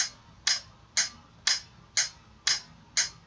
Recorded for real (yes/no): yes